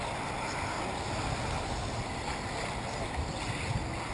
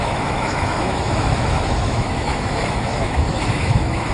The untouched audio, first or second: first